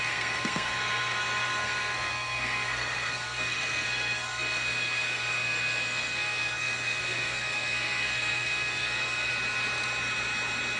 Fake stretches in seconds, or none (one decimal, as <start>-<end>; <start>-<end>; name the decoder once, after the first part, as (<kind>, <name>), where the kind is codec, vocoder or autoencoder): 0.0-9.3 (codec, SNAC)